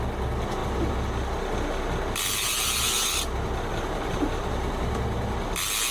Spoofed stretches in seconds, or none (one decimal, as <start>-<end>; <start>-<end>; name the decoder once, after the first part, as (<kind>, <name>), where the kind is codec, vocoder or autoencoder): 3.7-4.9 (vocoder, BigVGAN v2)